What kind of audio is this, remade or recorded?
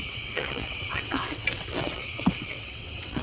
remade